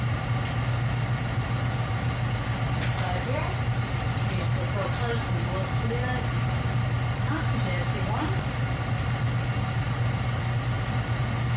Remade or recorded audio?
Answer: recorded